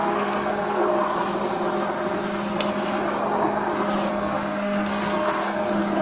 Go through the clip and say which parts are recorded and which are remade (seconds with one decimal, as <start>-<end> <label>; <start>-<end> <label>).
0.0-0.9 remade; 0.9-4.1 recorded; 4.1-6.0 remade